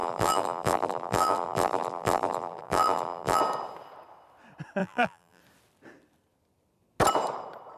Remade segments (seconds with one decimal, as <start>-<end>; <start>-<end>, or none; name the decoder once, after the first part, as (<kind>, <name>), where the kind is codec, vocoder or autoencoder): 0.0-3.4 (vocoder, BigVGAN v2); 4.8-5.4